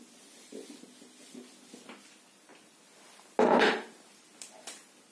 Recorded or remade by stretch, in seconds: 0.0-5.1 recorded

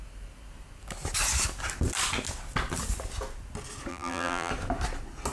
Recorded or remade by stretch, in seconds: 0.0-3.9 recorded; 3.9-4.5 remade; 4.5-5.3 recorded

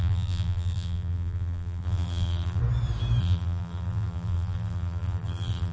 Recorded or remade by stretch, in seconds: 0.0-2.6 remade; 2.6-3.2 recorded; 3.2-5.7 remade

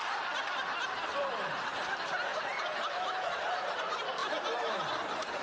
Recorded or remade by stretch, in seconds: 0.0-2.3 recorded; 2.3-3.8 remade; 3.8-4.2 recorded; 4.2-4.8 remade; 4.8-5.4 recorded

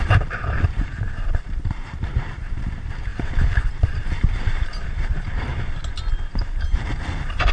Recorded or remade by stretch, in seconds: 0.0-5.5 remade; 5.5-6.3 recorded; 6.3-7.5 remade

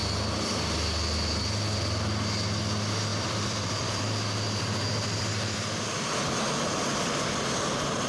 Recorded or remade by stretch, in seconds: 0.0-3.1 recorded; 3.1-6.1 remade; 6.1-8.1 recorded

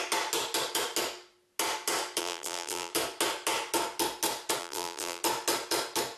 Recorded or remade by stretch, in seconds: 0.0-2.2 recorded; 2.2-2.9 remade; 2.9-4.6 recorded; 4.6-5.2 remade; 5.2-6.2 recorded

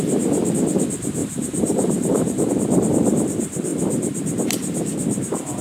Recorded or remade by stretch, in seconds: 0.0-1.2 recorded; 1.2-2.5 remade; 2.5-5.6 recorded